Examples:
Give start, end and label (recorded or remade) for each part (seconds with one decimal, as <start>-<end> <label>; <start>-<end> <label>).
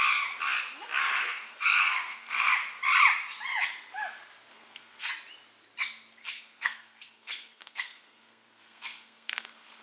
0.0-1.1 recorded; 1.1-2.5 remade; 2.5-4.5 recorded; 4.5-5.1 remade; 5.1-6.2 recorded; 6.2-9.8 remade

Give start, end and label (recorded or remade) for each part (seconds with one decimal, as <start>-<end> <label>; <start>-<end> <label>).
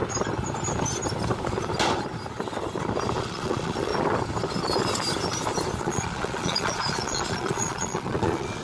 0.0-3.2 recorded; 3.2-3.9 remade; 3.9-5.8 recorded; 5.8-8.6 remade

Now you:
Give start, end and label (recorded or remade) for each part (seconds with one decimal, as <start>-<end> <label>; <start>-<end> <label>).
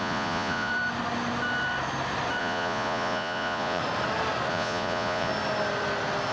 0.0-0.7 remade; 0.7-2.4 recorded; 2.4-3.8 remade; 3.8-4.5 recorded; 4.5-5.3 remade; 5.3-6.3 recorded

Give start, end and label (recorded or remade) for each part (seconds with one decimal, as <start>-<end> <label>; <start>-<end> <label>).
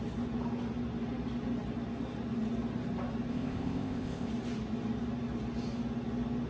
0.0-3.3 recorded; 3.3-4.3 remade; 4.3-6.5 recorded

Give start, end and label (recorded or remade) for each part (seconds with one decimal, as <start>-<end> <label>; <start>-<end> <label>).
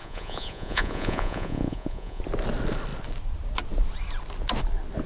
0.0-2.2 remade; 2.2-5.1 recorded